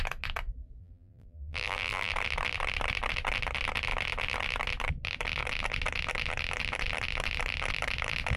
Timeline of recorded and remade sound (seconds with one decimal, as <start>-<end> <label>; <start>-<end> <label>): 0.0-0.8 recorded; 0.8-2.1 remade; 2.1-8.4 recorded